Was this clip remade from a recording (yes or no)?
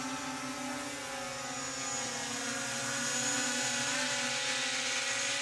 no